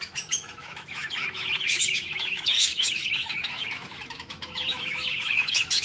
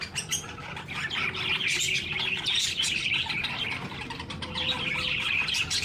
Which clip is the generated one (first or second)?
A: first